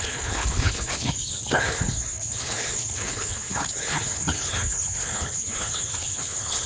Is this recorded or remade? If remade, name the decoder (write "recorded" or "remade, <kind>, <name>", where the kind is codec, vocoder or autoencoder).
remade, codec, HILCodec